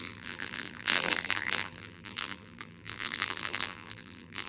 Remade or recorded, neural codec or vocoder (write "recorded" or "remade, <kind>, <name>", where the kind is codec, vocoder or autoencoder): remade, vocoder, BigVGAN v2